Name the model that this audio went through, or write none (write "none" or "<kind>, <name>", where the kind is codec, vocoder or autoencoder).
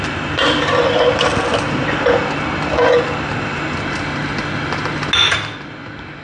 none